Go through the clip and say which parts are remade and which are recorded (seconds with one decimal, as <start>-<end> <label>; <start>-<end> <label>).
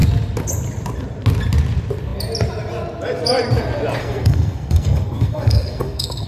0.0-4.0 recorded; 4.0-6.3 remade